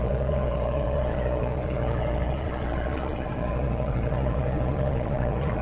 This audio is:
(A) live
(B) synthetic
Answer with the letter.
B